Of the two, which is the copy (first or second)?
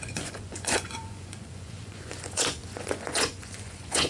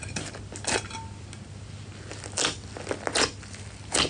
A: first